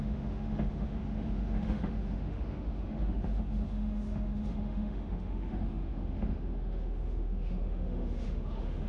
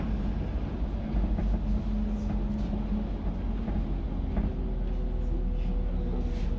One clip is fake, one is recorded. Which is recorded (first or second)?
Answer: second